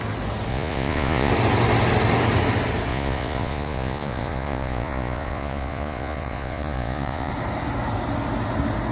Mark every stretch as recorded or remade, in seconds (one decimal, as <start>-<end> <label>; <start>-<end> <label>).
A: 0.0-0.5 recorded; 0.5-1.3 remade; 1.3-2.9 recorded; 2.9-7.3 remade; 7.3-8.9 recorded